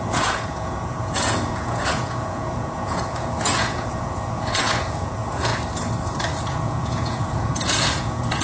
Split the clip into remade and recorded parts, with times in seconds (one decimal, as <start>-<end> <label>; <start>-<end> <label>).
0.0-5.5 remade; 5.5-6.4 recorded; 6.4-8.4 remade